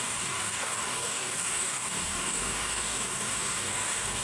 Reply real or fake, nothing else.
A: fake